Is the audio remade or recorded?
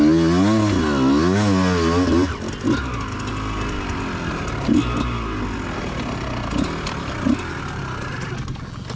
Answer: recorded